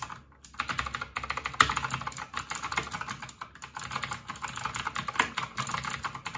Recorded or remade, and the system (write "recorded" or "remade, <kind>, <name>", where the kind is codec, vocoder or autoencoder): recorded